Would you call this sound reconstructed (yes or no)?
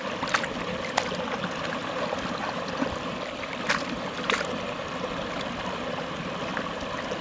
no